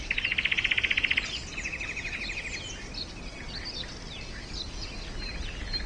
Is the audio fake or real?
real